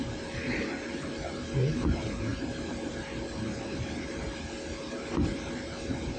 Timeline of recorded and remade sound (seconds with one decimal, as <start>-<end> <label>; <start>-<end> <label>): 0.0-6.2 recorded